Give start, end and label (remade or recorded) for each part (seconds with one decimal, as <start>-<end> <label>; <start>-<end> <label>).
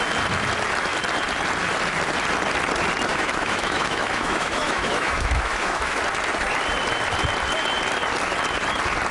0.0-3.1 recorded; 3.1-6.0 remade; 6.0-9.1 recorded